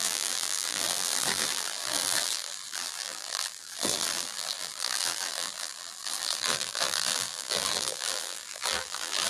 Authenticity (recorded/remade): remade